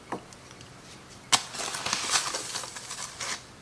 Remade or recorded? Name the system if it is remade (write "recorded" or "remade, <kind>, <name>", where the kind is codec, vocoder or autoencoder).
recorded